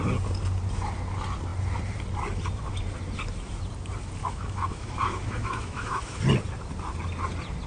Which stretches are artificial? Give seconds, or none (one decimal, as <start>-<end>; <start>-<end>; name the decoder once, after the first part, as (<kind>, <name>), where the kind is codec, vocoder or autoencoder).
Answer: 4.2-6.2 (autoencoder, DAC-VAE)